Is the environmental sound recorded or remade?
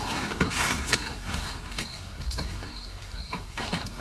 remade